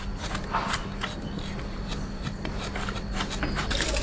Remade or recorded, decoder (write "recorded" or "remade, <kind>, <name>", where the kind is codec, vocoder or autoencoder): recorded